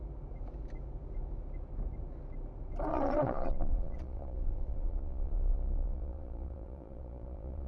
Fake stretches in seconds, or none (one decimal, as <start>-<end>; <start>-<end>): 2.9-7.7